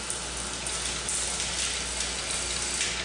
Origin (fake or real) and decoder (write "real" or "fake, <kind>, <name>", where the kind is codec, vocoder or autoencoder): real